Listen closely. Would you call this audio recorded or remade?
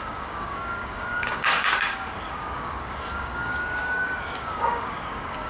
remade